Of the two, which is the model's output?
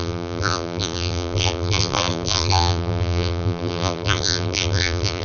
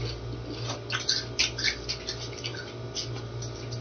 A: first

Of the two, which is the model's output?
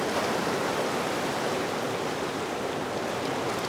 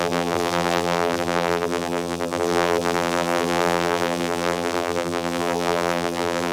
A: second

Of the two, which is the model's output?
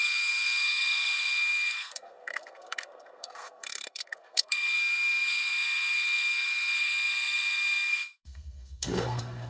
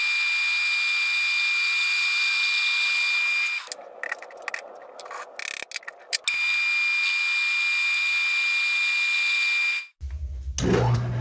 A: first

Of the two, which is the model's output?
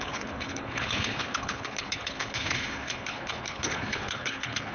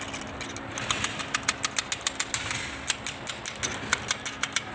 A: first